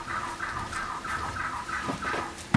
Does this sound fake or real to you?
real